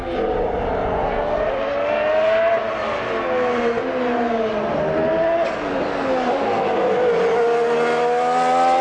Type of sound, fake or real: real